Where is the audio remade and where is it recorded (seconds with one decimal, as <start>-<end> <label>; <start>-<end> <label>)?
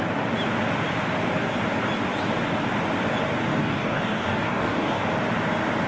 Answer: 0.0-3.5 recorded; 3.5-5.0 remade; 5.0-5.9 recorded